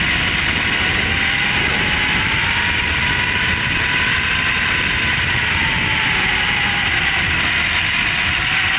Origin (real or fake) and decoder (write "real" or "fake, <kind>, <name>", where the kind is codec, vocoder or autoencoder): real